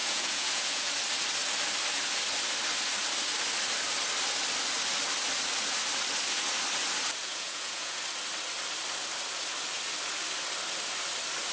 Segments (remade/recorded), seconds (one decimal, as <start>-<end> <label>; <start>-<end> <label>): 0.0-0.9 remade; 0.9-7.2 recorded; 7.2-8.0 remade; 8.0-11.5 recorded